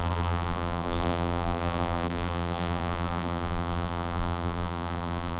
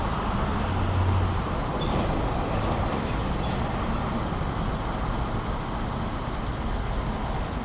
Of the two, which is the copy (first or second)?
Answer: first